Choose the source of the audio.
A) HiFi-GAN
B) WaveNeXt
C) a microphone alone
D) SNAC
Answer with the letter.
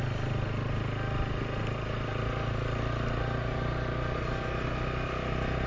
C